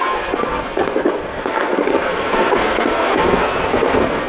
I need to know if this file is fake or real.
fake